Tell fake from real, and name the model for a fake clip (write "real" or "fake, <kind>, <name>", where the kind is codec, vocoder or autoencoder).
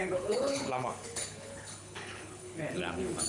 fake, codec, HILCodec